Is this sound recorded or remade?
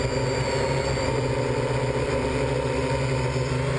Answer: recorded